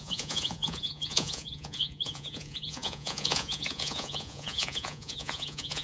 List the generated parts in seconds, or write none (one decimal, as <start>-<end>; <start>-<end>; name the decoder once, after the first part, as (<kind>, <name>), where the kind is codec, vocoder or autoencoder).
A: 0.0-5.8 (vocoder, Vocos)